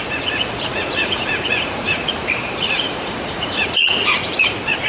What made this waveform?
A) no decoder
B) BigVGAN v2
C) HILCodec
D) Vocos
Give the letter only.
D